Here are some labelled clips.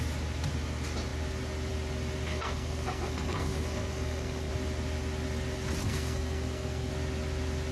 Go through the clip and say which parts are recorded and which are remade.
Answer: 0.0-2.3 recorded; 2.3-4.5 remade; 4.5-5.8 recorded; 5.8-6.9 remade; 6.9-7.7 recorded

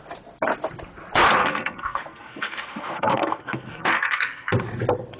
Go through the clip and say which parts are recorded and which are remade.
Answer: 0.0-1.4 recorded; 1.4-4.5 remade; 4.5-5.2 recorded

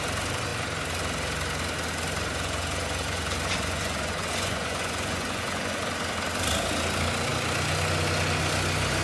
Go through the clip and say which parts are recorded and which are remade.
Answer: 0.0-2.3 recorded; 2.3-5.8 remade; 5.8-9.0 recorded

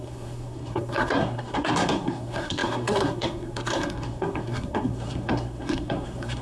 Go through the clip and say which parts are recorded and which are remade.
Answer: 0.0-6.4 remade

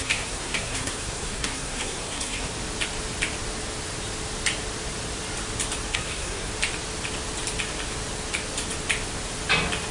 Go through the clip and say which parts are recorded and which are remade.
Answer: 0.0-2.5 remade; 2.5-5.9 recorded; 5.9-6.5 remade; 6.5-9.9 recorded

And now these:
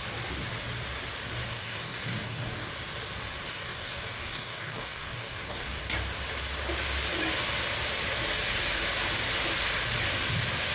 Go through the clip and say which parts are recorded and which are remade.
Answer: 0.0-1.5 recorded; 1.5-2.7 remade; 2.7-3.5 recorded; 3.5-5.8 remade; 5.8-10.7 recorded